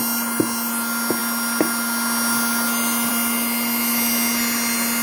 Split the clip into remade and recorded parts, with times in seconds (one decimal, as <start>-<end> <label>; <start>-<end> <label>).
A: 0.0-5.0 recorded